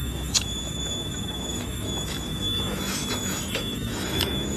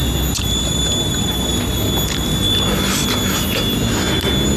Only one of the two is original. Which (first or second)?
second